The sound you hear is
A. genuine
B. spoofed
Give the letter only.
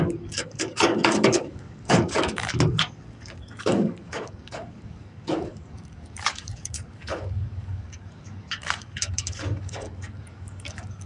B